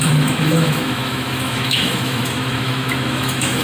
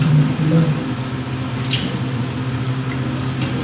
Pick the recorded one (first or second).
second